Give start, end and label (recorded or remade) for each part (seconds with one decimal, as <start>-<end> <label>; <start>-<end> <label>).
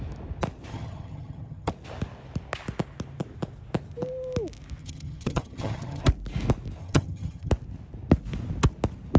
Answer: 0.0-0.7 recorded; 0.7-1.7 remade; 1.7-4.8 recorded; 4.8-6.0 remade; 6.0-6.8 recorded; 6.8-7.5 remade; 7.5-9.2 recorded